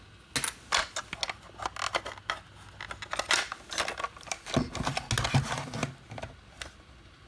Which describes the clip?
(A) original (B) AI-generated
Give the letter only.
A